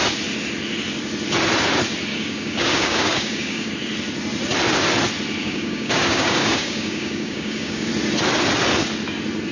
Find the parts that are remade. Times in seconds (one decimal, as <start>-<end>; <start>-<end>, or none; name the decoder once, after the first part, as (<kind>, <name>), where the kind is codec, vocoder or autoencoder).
2.1-3.7 (codec, DAC); 5.4-7.9